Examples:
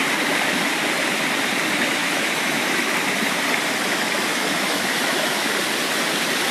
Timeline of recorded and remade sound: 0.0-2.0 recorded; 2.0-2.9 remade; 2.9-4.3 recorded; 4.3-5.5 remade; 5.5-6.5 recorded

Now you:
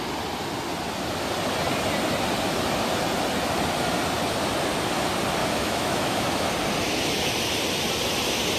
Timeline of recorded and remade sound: 0.0-5.4 recorded; 5.4-6.5 remade; 6.5-8.6 recorded

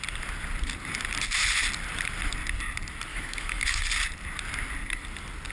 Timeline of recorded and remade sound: 0.0-3.1 recorded; 3.1-3.8 remade; 3.8-5.5 recorded

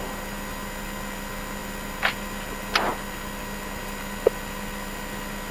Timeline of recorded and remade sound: 0.0-5.5 recorded

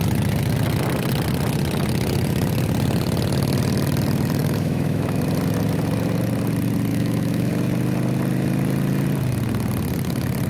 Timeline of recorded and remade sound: 0.0-4.4 recorded; 4.4-5.2 remade; 5.2-6.9 recorded; 6.9-7.5 remade; 7.5-10.5 recorded

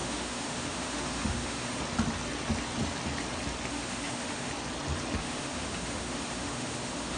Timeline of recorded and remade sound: 0.0-1.8 remade; 1.8-3.7 recorded; 3.7-4.5 remade; 4.5-5.2 recorded; 5.2-7.2 remade

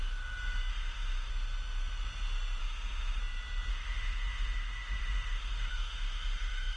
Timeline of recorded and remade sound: 0.0-0.7 recorded; 0.7-1.3 remade; 1.3-2.6 recorded; 2.6-3.2 remade; 3.2-3.7 recorded; 3.7-6.8 remade

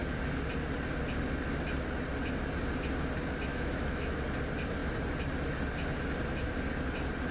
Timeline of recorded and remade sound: 0.0-3.5 recorded; 3.5-4.2 remade; 4.2-7.3 recorded